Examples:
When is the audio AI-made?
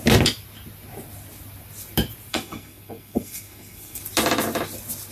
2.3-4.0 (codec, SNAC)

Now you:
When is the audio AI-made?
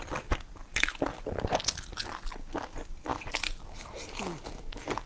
none